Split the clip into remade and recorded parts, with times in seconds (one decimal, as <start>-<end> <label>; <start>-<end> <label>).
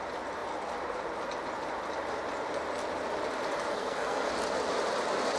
0.0-3.7 recorded; 3.7-4.3 remade; 4.3-5.4 recorded